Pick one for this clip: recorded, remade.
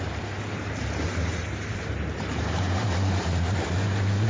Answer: remade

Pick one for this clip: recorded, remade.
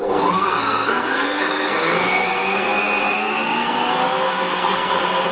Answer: remade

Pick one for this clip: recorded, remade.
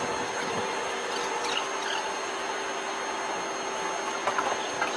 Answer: recorded